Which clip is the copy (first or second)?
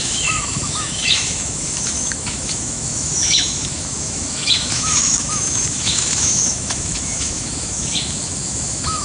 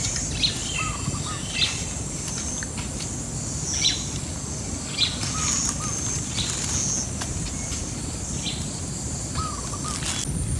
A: first